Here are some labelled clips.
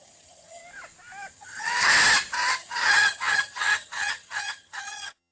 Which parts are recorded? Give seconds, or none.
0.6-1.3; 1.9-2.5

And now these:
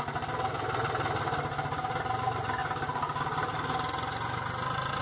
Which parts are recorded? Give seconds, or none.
0.0-5.0